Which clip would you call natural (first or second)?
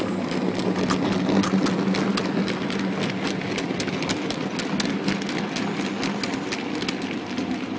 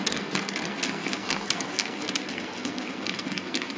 first